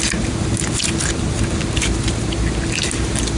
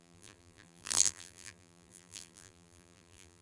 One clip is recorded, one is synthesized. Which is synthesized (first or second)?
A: second